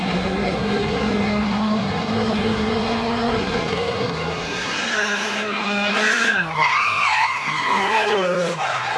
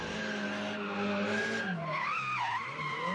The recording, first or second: second